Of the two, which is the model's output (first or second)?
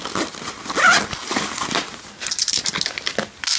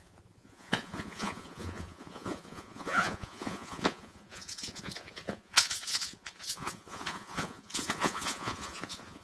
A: second